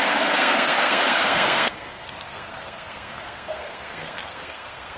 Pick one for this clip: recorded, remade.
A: remade